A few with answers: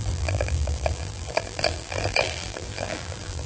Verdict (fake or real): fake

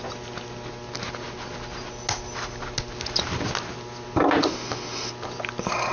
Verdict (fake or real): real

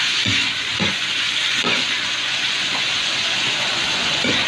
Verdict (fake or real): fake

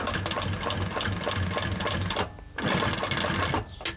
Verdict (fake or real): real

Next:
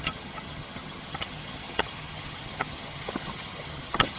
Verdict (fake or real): fake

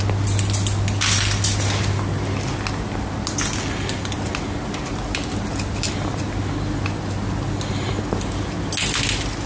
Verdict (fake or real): real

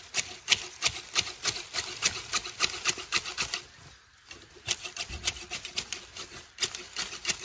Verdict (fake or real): real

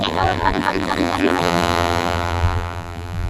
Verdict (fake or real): fake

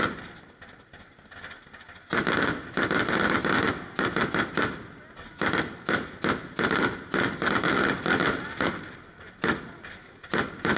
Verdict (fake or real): real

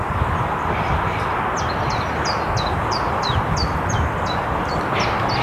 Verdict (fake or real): real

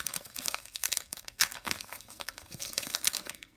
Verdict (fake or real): fake